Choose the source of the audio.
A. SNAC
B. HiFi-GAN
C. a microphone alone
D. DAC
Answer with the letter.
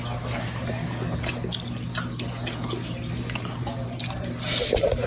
C